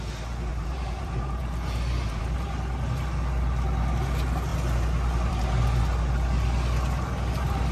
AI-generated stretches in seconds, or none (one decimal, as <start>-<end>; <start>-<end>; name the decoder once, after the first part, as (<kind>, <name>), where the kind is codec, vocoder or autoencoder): 0.5-2.2 (vocoder, BigVGAN v2)